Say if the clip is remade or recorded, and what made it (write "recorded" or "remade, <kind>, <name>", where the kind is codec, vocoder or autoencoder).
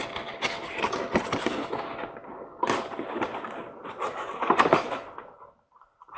recorded